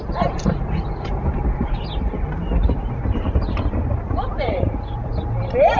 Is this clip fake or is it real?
fake